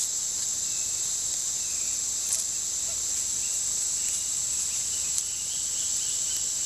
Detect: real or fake real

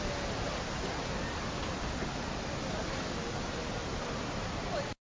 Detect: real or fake real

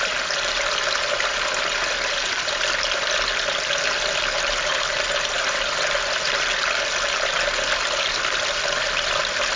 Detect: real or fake real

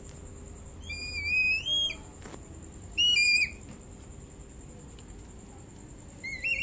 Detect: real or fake real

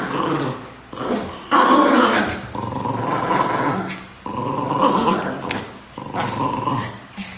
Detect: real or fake real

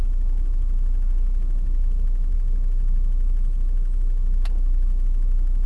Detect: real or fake real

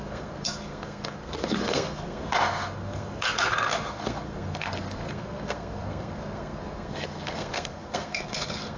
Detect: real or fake fake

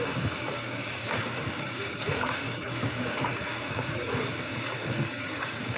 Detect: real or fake fake